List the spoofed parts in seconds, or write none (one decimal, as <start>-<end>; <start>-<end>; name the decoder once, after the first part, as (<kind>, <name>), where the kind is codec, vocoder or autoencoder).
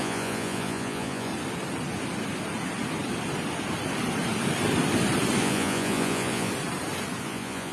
0.0-1.3 (vocoder, Vocos); 5.4-6.5; 7.2-7.7